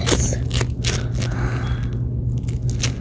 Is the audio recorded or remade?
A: recorded